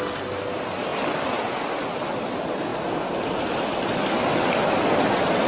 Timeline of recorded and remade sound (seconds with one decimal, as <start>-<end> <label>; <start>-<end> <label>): 0.0-5.5 recorded

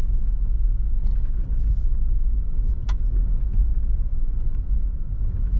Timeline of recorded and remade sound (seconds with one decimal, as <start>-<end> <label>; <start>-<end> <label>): 0.0-5.6 recorded

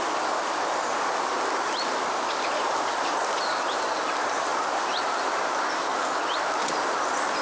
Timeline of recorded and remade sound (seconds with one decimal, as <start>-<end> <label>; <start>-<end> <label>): 0.0-7.4 recorded